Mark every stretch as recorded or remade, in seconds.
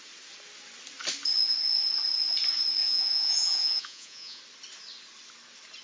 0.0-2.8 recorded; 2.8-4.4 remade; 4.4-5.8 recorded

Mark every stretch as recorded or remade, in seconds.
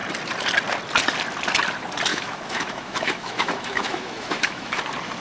0.0-2.1 recorded; 2.1-4.7 remade; 4.7-5.2 recorded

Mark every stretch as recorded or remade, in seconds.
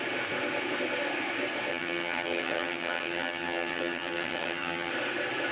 0.0-1.7 recorded; 1.7-4.9 remade; 4.9-5.5 recorded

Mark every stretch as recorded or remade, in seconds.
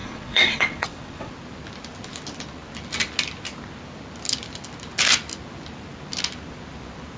0.0-1.3 remade; 1.3-7.2 recorded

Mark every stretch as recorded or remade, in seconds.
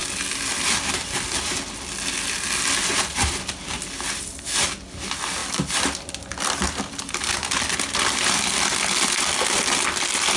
0.0-10.4 recorded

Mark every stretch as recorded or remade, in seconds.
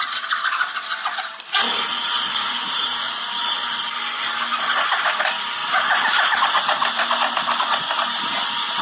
0.0-2.3 recorded; 2.3-3.5 remade; 3.5-5.6 recorded; 5.6-7.0 remade; 7.0-8.8 recorded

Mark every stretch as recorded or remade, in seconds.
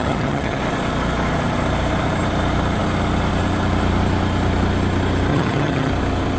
0.0-0.6 remade; 0.6-5.3 recorded; 5.3-5.9 remade; 5.9-6.4 recorded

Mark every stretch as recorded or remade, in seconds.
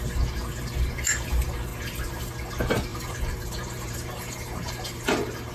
0.0-2.9 recorded; 2.9-5.5 remade